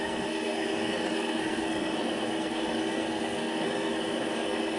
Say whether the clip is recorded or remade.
remade